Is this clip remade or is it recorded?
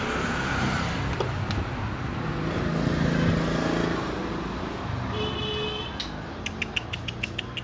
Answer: recorded